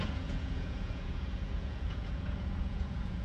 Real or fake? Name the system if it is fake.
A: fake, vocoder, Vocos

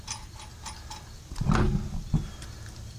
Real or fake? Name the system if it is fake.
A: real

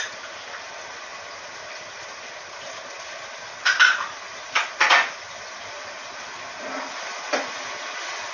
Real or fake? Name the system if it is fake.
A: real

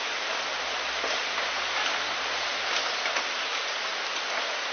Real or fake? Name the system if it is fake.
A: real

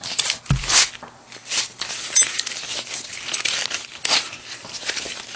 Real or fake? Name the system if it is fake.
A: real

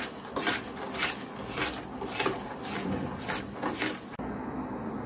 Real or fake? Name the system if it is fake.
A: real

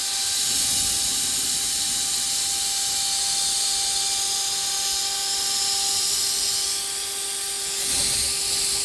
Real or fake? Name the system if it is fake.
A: real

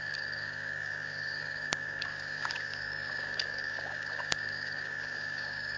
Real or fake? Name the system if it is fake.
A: fake, codec, DAC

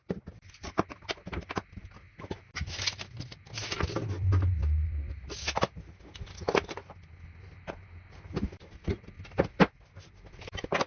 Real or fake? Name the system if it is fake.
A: real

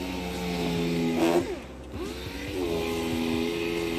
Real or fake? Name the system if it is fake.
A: real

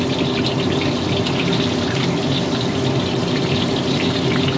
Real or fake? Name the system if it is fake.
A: real